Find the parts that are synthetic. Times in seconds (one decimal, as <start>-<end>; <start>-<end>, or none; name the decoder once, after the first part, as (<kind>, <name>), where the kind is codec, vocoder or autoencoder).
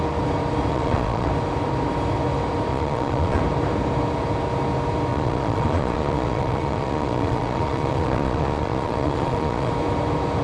0.7-1.3 (vocoder, Vocos); 2.7-3.4; 5.1-9.7